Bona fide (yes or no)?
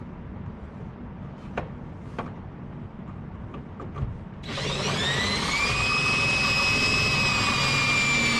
yes